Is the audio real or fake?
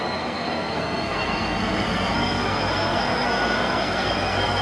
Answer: fake